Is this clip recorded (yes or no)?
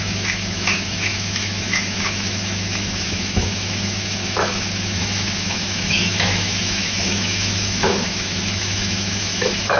no